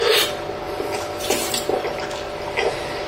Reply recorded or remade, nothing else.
recorded